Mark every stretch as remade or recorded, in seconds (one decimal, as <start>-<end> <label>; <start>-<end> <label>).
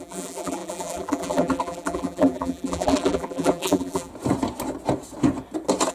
0.0-4.1 remade; 4.1-5.9 recorded